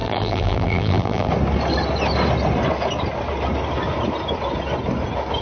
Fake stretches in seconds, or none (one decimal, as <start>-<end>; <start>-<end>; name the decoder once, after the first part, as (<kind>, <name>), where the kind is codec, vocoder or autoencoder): 0.0-1.3 (vocoder, BigVGAN v2)